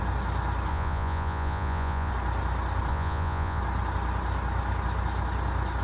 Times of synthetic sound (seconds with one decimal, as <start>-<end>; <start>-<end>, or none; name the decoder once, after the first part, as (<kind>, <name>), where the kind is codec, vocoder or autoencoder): 0.7-2.1 (vocoder, Vocos); 2.9-3.6